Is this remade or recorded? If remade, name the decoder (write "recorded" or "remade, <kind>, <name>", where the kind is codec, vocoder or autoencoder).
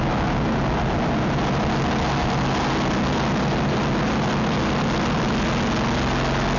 recorded